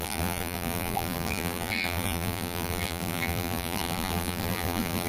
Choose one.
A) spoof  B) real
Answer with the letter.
A